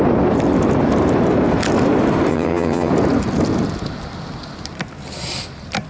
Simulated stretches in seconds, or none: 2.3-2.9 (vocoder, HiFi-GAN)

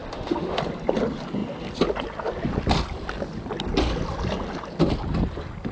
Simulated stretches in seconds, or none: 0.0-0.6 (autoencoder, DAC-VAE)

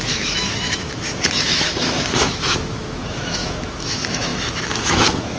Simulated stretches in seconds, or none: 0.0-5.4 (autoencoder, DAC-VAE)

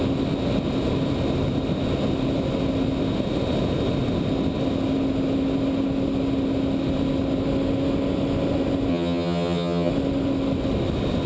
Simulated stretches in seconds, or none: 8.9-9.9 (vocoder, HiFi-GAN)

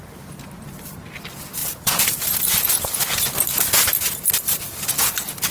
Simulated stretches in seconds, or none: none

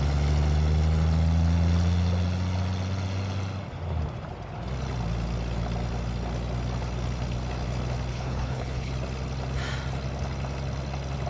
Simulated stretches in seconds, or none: 8.1-8.9 (codec, HILCodec)